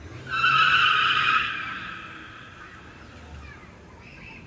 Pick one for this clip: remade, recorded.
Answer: recorded